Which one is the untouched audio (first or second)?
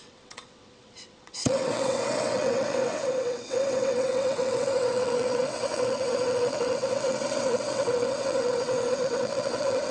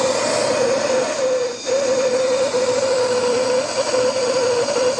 second